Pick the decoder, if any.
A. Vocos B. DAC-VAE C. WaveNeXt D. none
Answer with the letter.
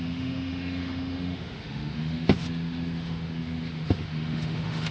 B